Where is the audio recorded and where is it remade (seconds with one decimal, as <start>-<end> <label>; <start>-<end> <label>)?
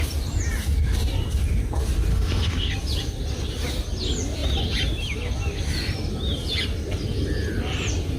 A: 0.0-2.1 recorded; 2.1-2.7 remade; 2.7-8.2 recorded